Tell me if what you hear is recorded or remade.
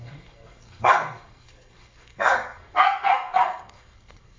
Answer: remade